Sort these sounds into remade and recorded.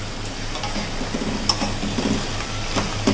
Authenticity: recorded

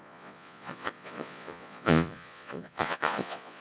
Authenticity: remade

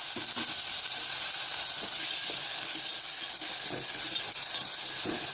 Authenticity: recorded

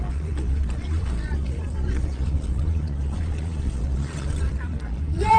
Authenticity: remade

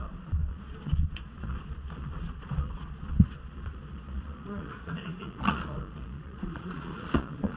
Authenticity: remade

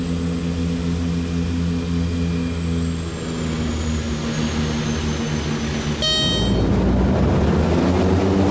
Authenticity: recorded